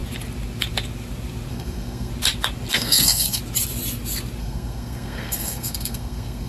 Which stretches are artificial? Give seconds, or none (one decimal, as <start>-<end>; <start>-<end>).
1.5-2.1; 2.7-3.4; 4.4-6.5